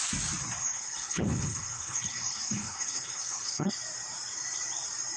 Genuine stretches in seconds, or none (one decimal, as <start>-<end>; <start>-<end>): 0.0-0.6; 3.7-5.2